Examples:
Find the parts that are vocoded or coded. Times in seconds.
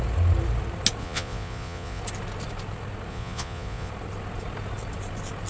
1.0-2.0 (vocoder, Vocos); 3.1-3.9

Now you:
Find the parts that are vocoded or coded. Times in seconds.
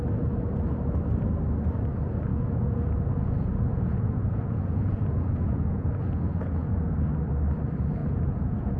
2.3-7.0 (vocoder, Vocos); 8.0-8.8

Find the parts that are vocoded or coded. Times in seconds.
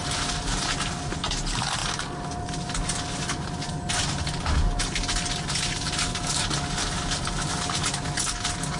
none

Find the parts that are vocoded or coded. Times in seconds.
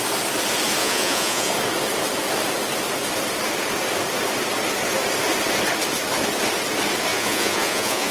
0.8-1.5 (vocoder, Vocos); 7.1-8.1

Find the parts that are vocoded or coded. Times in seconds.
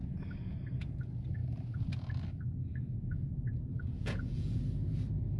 2.7-4.6 (vocoder, Vocos)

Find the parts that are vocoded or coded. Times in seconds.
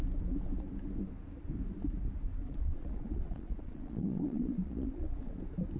2.4-5.3 (vocoder, Vocos)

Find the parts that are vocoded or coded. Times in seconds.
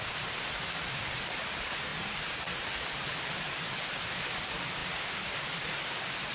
none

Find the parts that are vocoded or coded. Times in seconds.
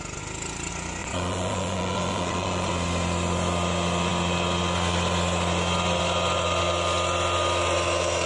1.0-2.7 (vocoder, Vocos)